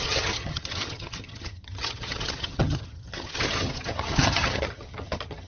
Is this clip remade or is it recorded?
remade